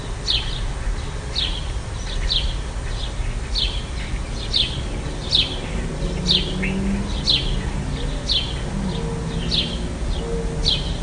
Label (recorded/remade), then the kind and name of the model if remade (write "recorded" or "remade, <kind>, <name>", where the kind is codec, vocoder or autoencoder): recorded